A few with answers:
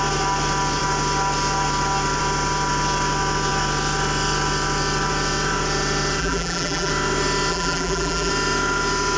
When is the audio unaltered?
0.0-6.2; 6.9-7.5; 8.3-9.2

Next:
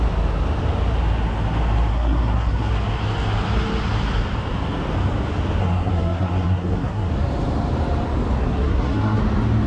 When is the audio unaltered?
0.0-1.9; 2.7-5.6; 7.1-8.4; 9.2-9.7

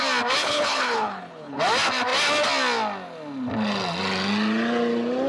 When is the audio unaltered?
0.0-0.4; 1.6-5.3

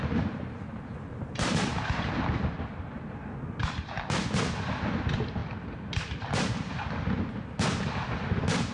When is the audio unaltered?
0.0-8.7

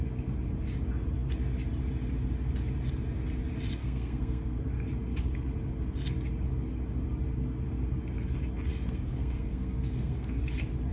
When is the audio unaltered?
0.0-3.8; 4.6-8.7; 10.4-10.9